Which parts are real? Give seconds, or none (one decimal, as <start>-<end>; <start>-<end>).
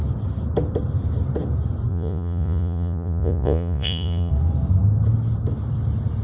0.0-1.9; 4.3-6.2